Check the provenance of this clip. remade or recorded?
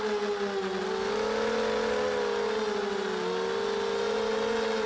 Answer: recorded